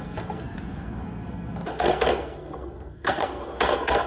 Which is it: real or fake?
fake